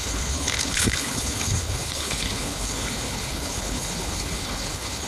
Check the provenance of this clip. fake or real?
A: fake